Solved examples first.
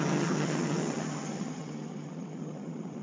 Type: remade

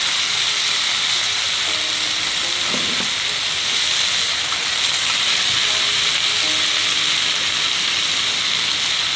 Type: recorded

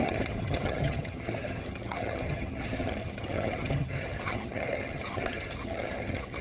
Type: remade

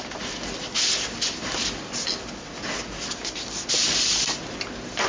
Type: recorded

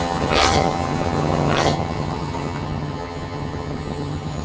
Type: remade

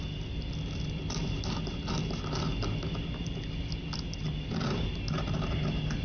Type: recorded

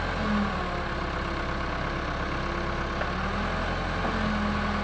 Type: recorded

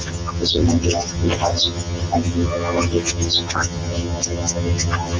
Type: remade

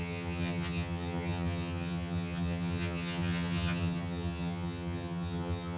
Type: remade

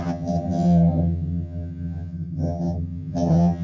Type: remade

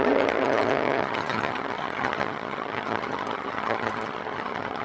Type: remade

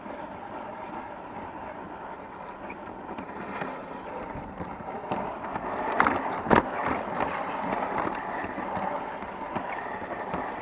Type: recorded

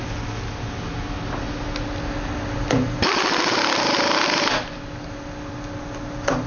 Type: recorded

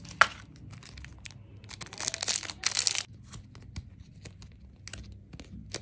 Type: recorded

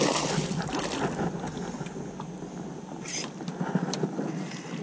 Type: recorded